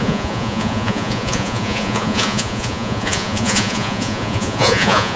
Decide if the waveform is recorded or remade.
remade